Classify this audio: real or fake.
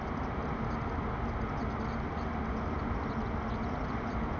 real